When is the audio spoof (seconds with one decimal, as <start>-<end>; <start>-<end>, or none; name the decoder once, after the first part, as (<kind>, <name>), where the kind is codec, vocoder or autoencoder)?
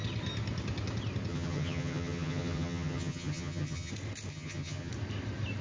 1.3-3.9 (vocoder, HiFi-GAN); 4.3-4.9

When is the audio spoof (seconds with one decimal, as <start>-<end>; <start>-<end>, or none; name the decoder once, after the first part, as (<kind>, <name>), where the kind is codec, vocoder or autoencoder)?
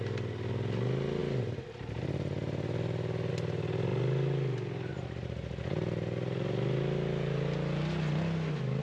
none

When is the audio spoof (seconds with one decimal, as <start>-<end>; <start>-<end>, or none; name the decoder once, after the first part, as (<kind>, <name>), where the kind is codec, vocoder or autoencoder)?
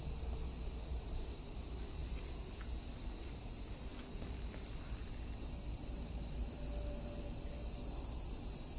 0.9-1.5 (vocoder, BigVGAN v2)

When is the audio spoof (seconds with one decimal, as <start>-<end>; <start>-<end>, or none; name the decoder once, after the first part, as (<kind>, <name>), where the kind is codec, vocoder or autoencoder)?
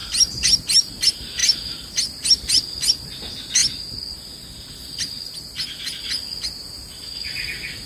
none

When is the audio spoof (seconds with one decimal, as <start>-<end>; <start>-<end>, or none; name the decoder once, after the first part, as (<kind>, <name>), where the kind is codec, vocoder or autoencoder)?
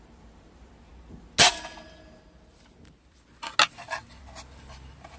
none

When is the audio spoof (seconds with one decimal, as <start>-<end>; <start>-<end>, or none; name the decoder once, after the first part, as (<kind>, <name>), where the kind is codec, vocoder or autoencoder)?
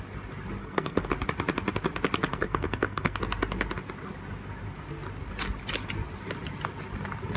0.6-1.1 (codec, SNAC); 2.3-3.2